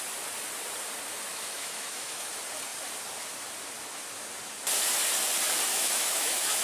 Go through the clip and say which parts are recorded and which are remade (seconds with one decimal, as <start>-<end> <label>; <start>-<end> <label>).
0.0-1.3 recorded; 1.3-2.3 remade; 2.3-5.7 recorded; 5.7-6.6 remade